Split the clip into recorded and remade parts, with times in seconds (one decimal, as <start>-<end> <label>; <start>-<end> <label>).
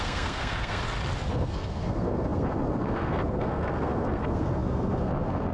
0.0-0.8 remade; 0.8-1.3 recorded; 1.3-5.5 remade